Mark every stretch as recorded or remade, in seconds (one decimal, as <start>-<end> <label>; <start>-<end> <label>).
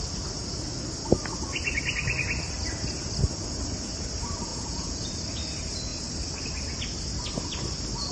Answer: 0.0-4.5 recorded; 4.5-5.1 remade; 5.1-8.1 recorded